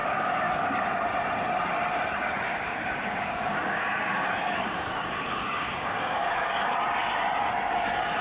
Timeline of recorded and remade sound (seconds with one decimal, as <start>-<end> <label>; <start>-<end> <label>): 0.0-0.8 remade; 0.8-2.5 recorded; 2.5-6.5 remade; 6.5-8.2 recorded